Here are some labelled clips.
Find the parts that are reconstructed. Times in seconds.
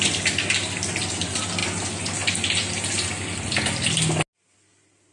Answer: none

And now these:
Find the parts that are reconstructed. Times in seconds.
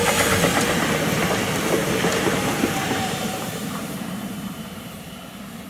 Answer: 1.8-5.2 (vocoder, BigVGAN v2)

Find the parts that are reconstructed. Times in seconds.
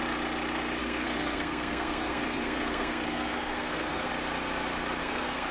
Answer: 0.8-4.1 (codec, SNAC); 5.0-5.5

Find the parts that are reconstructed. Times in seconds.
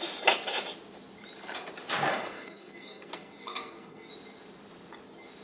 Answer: 2.1-4.1 (codec, SNAC)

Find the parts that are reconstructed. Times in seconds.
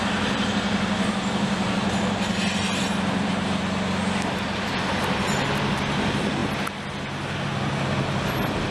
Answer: none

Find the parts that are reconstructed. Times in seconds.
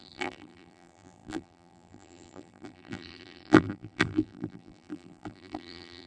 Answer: 0.0-6.1 (vocoder, BigVGAN v2)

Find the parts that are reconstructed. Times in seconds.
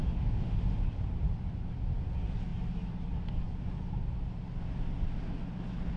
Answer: 0.0-0.8 (autoencoder, DAC-VAE)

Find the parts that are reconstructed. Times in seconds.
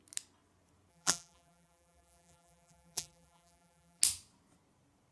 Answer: 0.9-4.0 (vocoder, BigVGAN v2)